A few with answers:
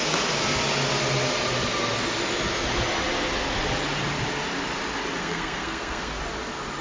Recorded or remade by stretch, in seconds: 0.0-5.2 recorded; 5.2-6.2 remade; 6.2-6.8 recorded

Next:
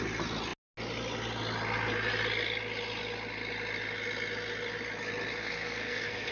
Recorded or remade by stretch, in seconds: 0.0-5.4 recorded; 5.4-6.3 remade

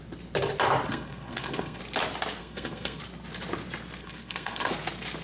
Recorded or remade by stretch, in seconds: 0.0-0.9 recorded; 0.9-1.8 remade; 1.8-2.4 recorded; 2.4-3.0 remade; 3.0-4.0 recorded; 4.0-4.7 remade; 4.7-5.2 recorded

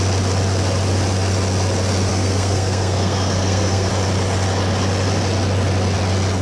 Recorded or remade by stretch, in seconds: 0.0-2.1 recorded; 2.1-3.9 remade; 3.9-6.4 recorded

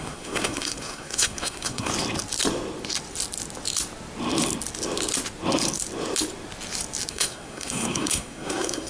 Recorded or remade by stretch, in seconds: 0.0-1.9 remade; 1.9-7.1 recorded; 7.1-8.9 remade